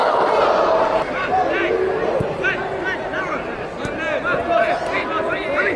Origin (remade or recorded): recorded